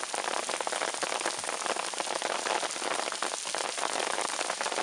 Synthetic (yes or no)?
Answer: no